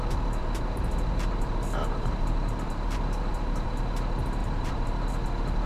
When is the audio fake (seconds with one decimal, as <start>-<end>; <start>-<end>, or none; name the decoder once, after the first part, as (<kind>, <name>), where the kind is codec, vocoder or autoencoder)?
0.4-3.8 (vocoder, BigVGAN v2); 4.4-5.1